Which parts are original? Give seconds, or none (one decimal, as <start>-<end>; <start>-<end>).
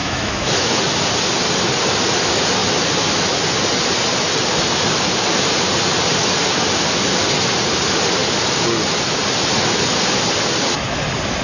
0.8-11.4